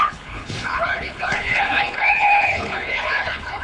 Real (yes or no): no